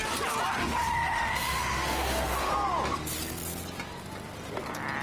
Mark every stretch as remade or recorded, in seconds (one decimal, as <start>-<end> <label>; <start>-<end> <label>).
0.0-0.6 recorded; 0.6-2.5 remade; 2.5-5.0 recorded